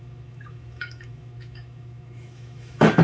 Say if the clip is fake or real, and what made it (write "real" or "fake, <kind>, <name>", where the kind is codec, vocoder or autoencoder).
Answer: fake, autoencoder, DAC-VAE